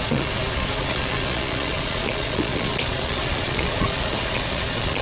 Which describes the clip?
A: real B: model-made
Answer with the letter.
B